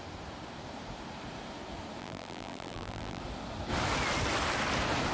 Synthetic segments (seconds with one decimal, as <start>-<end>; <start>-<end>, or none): 2.0-3.2